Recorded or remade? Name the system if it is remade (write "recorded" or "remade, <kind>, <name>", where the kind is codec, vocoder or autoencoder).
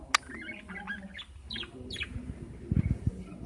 recorded